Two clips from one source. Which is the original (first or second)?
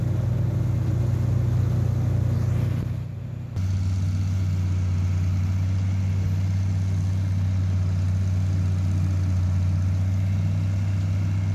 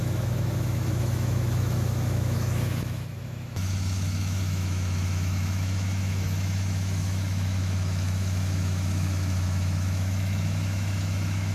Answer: first